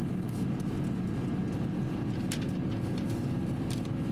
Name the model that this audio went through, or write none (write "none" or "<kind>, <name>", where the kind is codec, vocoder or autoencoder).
none